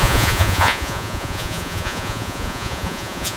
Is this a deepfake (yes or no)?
yes